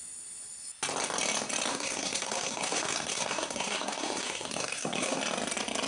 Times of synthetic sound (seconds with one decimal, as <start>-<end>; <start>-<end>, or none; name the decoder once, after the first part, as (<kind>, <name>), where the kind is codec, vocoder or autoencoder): 1.7-5.2 (codec, SNAC)